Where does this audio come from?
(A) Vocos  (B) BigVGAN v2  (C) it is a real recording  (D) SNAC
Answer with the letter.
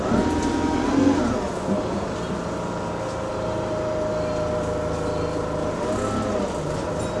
C